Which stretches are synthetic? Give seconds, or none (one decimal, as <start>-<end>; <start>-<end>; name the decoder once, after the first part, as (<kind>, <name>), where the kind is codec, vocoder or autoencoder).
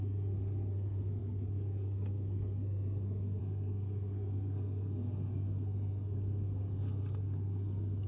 0.0-8.1 (codec, SNAC)